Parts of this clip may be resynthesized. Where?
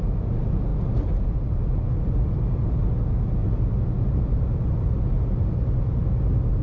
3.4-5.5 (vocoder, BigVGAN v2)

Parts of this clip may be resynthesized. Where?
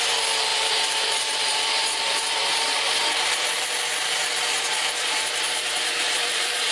0.5-3.7 (vocoder, BigVGAN v2); 4.8-6.7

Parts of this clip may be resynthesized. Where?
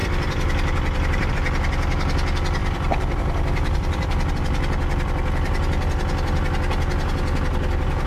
0.0-1.3 (vocoder, BigVGAN v2); 2.6-4.3